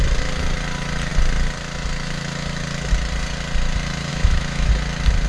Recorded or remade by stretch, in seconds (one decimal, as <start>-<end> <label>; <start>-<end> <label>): 0.0-4.1 recorded; 4.1-4.7 remade; 4.7-5.3 recorded